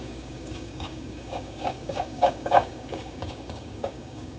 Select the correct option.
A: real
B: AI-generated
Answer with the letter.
B